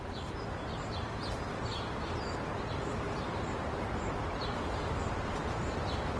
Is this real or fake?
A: real